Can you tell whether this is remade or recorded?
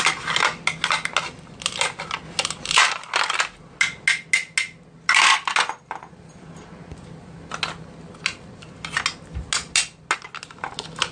recorded